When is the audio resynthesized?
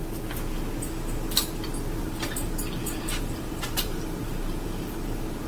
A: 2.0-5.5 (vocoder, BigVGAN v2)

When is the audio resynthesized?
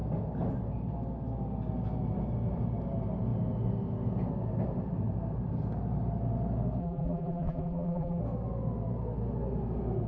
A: 6.8-8.2 (vocoder, BigVGAN v2)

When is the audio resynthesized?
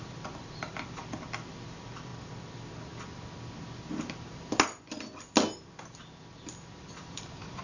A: 0.0-2.1 (vocoder, BigVGAN v2); 6.7-7.6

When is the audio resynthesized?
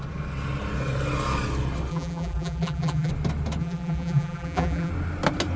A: 1.9-3.1 (vocoder, BigVGAN v2); 3.6-4.9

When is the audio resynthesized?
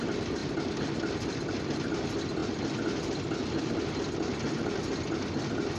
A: none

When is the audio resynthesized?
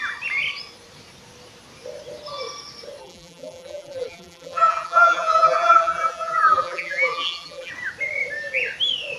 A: 3.0-7.7 (vocoder, BigVGAN v2)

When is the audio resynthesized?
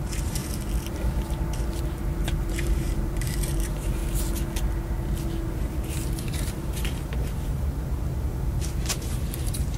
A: 0.0-0.4 (vocoder, BigVGAN v2); 2.5-4.0; 6.2-9.8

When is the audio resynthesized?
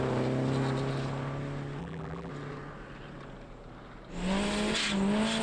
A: 1.8-2.3 (vocoder, BigVGAN v2)